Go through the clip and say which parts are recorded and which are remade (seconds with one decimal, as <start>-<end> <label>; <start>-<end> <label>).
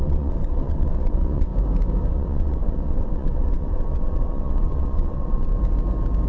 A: 0.0-1.5 remade; 1.5-2.1 recorded; 2.1-5.5 remade; 5.5-6.3 recorded